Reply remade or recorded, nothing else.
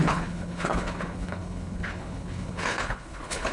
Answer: remade